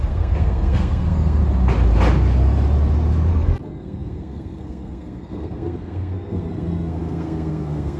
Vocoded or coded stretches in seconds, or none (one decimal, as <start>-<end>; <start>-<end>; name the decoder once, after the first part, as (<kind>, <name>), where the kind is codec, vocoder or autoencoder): 0.0-1.4 (codec, SNAC); 3.3-8.0